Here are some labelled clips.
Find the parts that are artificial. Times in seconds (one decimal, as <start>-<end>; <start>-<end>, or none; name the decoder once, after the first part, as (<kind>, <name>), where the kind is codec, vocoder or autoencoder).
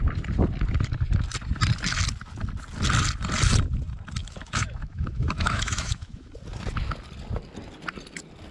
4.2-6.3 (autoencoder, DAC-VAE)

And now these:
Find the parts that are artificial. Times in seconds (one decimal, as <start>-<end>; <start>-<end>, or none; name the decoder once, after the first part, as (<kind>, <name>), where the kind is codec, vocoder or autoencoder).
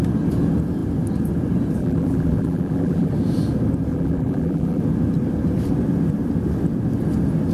1.8-3.1 (vocoder, BigVGAN v2); 3.9-4.8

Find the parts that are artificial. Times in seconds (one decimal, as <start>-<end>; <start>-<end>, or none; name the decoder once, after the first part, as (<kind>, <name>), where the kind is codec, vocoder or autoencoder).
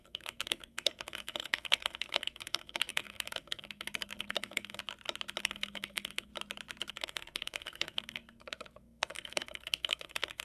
0.0-4.8 (codec, SNAC); 5.4-6.3; 6.9-10.4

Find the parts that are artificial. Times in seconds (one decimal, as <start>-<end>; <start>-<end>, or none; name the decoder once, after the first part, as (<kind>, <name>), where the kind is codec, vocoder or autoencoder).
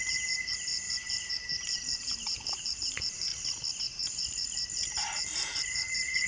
0.0-3.3 (vocoder, BigVGAN v2); 3.8-6.3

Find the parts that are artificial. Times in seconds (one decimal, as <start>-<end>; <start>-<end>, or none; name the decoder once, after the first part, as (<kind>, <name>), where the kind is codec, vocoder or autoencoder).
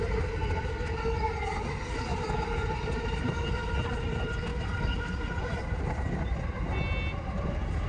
4.5-6.7 (vocoder, BigVGAN v2)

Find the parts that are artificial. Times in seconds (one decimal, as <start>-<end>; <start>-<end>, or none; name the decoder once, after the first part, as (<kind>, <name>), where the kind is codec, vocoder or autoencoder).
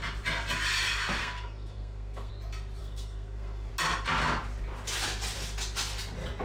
1.2-2.3 (codec, SNAC); 2.8-3.7